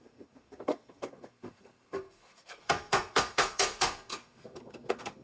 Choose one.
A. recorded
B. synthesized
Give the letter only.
B